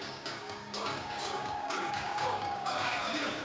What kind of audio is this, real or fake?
fake